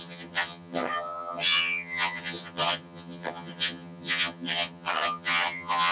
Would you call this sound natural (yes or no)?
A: no